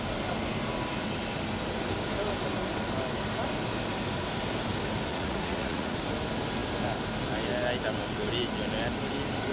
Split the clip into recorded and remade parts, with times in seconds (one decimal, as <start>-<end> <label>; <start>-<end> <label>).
0.0-5.1 recorded; 5.1-6.0 remade; 6.0-9.5 recorded